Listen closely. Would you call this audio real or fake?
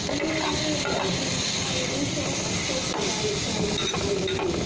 real